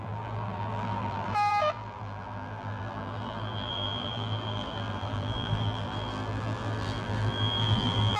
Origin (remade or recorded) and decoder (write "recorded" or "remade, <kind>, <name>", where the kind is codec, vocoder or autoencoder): remade, vocoder, BigVGAN v2